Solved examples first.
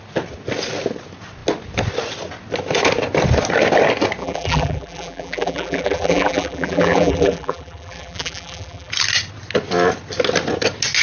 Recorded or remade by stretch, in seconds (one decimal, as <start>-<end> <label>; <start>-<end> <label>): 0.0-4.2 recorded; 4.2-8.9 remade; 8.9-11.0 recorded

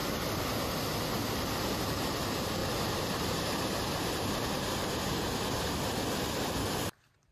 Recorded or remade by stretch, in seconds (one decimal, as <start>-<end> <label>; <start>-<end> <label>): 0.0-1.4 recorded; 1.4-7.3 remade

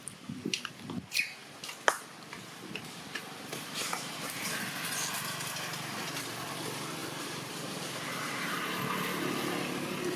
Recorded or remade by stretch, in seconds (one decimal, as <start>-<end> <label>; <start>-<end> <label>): 0.0-1.4 recorded; 1.4-4.4 remade; 4.4-7.0 recorded; 7.0-8.5 remade; 8.5-10.2 recorded